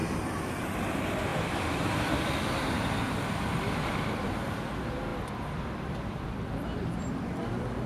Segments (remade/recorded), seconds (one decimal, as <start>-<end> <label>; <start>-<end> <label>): 0.0-1.3 recorded; 1.3-2.2 remade; 2.2-5.1 recorded; 5.1-7.2 remade; 7.2-7.9 recorded